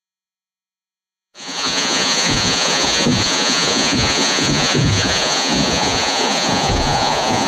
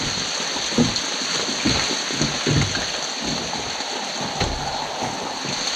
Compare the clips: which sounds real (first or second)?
second